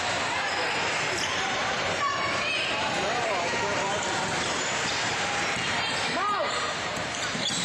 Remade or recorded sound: remade